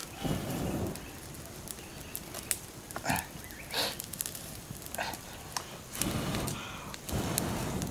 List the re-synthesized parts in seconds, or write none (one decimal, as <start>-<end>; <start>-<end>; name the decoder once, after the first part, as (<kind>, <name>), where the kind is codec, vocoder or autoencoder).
none

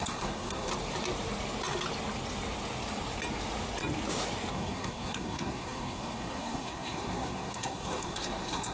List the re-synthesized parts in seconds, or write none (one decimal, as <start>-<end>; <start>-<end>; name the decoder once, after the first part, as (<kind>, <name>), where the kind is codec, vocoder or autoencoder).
0.0-0.7 (codec, SNAC); 4.5-8.7